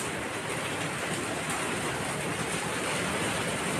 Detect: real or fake real